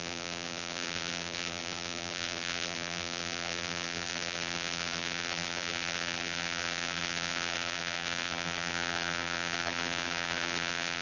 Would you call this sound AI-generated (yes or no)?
yes